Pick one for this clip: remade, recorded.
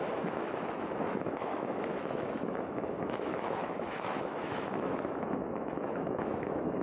remade